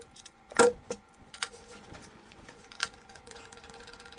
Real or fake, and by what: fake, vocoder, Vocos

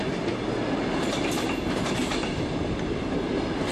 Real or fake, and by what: real